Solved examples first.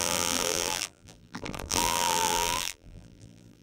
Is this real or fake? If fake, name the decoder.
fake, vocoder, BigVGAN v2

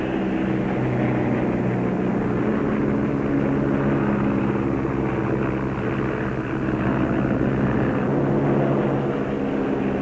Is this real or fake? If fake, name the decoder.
real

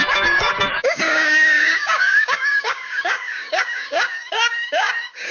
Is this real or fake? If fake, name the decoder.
fake, codec, DAC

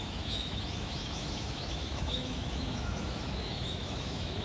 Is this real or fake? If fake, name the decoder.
fake, autoencoder, DAC-VAE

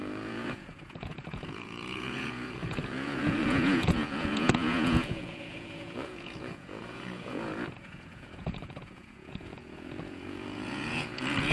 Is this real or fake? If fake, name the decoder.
fake, vocoder, Vocos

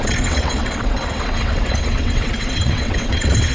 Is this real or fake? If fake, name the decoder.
fake, vocoder, WaveNeXt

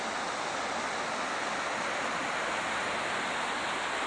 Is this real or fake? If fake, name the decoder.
real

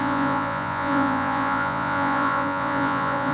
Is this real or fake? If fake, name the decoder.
fake, vocoder, Vocos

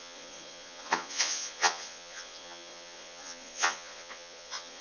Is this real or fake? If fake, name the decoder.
fake, vocoder, Vocos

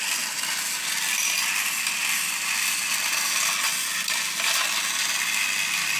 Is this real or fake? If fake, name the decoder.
real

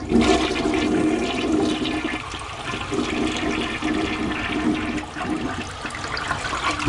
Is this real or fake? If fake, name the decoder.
real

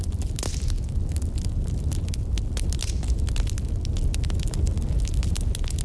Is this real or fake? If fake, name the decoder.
real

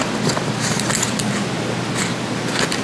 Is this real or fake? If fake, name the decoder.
real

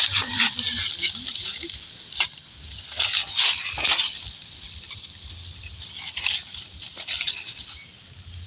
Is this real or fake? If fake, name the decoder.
real